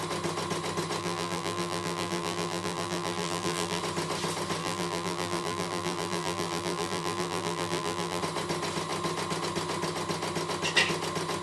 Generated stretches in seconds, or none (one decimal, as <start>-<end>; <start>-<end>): 1.0-3.8; 4.6-8.2